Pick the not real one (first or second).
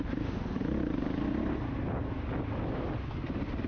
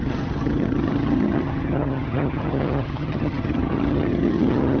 second